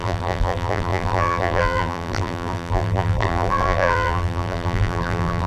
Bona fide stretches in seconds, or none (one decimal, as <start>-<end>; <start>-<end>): none